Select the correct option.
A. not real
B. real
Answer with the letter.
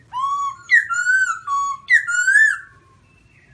B